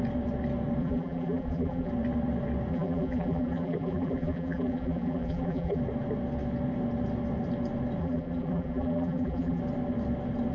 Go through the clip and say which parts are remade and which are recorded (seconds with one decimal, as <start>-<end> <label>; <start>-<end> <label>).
0.0-0.8 recorded; 0.8-1.9 remade; 1.9-2.7 recorded; 2.7-5.8 remade; 5.8-8.0 recorded; 8.0-9.6 remade; 9.6-10.5 recorded